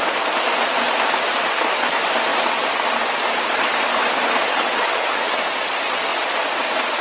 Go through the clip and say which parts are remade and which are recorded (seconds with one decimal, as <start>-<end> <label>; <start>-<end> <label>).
0.0-4.4 recorded; 4.4-5.4 remade; 5.4-7.0 recorded